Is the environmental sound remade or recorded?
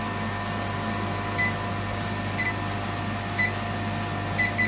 recorded